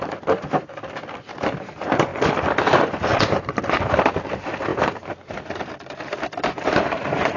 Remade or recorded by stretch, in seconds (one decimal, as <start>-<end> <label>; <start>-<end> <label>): 0.0-2.1 remade; 2.1-3.9 recorded; 3.9-7.4 remade